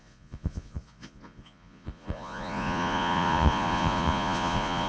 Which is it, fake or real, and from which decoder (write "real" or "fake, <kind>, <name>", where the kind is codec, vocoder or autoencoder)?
fake, vocoder, Vocos